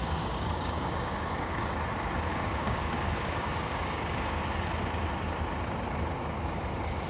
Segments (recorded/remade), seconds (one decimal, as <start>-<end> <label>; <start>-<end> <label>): 0.0-1.7 remade; 1.7-2.3 recorded; 2.3-4.4 remade; 4.4-7.1 recorded